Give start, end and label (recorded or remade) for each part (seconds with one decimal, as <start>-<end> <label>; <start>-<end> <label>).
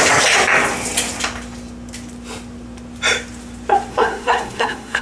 0.0-3.9 recorded; 3.9-5.0 remade